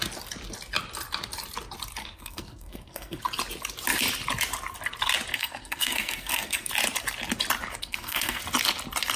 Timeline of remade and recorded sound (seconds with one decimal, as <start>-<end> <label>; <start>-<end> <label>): 0.0-2.0 recorded; 2.0-3.2 remade; 3.2-5.3 recorded; 5.3-6.7 remade; 6.7-7.8 recorded; 7.8-8.4 remade; 8.4-9.2 recorded